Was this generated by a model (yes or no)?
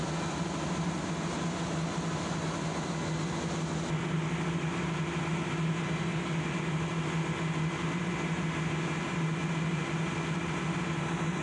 no